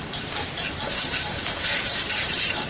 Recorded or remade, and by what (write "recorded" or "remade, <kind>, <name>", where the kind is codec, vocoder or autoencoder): remade, vocoder, BigVGAN v2